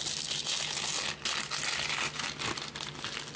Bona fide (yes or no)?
yes